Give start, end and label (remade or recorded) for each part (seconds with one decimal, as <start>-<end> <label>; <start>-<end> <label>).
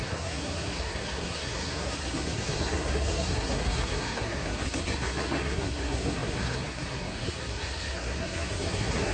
0.0-9.1 remade